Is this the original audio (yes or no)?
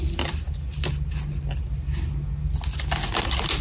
yes